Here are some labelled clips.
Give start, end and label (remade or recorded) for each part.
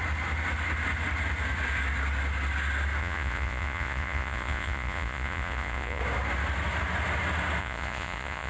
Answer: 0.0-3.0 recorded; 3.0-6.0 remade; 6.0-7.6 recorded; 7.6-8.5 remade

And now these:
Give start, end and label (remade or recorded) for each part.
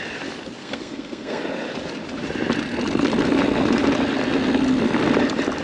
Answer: 0.0-0.6 recorded; 0.6-1.4 remade; 1.4-5.6 recorded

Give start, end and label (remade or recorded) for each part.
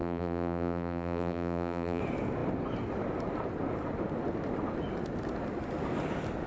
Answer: 0.0-2.0 remade; 2.0-6.5 recorded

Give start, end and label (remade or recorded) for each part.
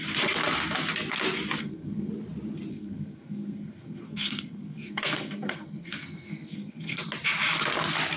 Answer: 0.0-1.6 recorded; 1.6-2.1 remade; 2.1-2.7 recorded; 2.7-7.0 remade; 7.0-8.2 recorded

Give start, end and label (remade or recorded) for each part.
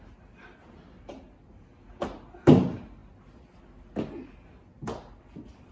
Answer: 0.0-5.7 recorded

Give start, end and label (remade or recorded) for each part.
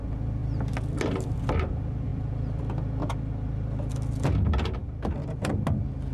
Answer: 0.0-0.4 recorded; 0.4-1.4 remade; 1.4-2.1 recorded; 2.1-2.6 remade; 2.6-6.1 recorded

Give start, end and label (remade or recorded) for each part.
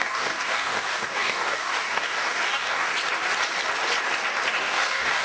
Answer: 0.0-2.9 remade; 2.9-4.6 recorded; 4.6-5.2 remade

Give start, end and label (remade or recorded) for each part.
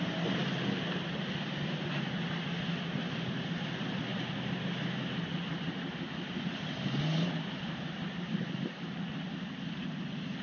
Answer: 0.0-4.1 recorded; 4.1-8.3 remade; 8.3-10.4 recorded